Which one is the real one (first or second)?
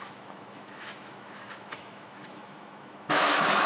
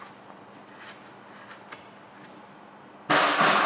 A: second